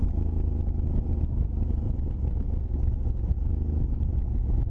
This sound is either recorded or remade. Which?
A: recorded